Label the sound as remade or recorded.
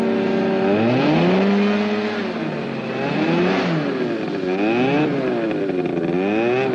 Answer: recorded